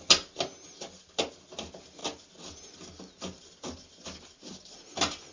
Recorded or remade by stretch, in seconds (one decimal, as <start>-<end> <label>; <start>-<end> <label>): 0.0-5.3 recorded